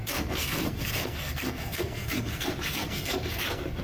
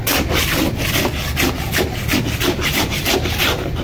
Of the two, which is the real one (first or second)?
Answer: second